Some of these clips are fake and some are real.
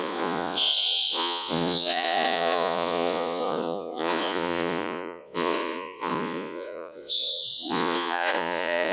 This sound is fake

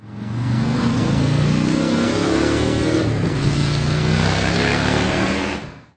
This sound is fake